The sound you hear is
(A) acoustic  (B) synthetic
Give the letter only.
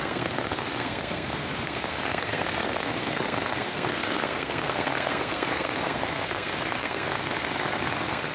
B